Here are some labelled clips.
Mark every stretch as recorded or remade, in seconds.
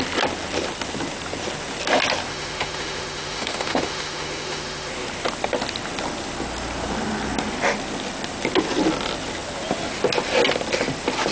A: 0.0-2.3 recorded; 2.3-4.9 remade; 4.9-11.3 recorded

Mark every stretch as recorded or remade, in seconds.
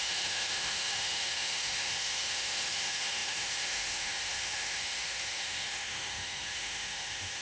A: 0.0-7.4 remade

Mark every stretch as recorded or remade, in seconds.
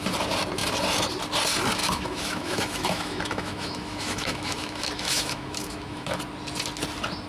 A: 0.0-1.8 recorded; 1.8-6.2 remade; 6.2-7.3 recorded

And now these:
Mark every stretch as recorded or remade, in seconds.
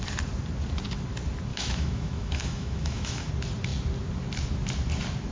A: 0.0-1.5 recorded; 1.5-3.3 remade; 3.3-5.3 recorded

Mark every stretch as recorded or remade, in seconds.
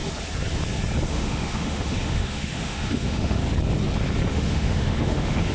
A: 0.0-1.1 recorded; 1.1-3.4 remade; 3.4-4.3 recorded; 4.3-5.5 remade